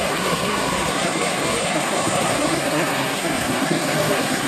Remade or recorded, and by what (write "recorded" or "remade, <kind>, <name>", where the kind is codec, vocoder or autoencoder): remade, codec, SNAC